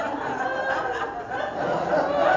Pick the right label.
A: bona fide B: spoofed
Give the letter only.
A